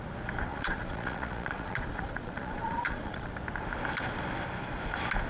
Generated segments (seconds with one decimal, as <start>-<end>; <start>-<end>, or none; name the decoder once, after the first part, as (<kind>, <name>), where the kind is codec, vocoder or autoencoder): 0.5-3.3 (vocoder, Vocos)